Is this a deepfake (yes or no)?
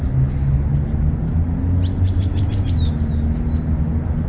no